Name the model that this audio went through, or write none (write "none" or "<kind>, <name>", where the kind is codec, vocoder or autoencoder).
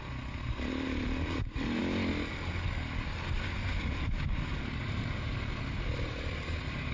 none